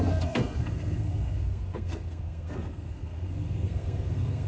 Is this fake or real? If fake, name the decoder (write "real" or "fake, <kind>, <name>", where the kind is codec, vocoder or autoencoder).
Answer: fake, codec, SNAC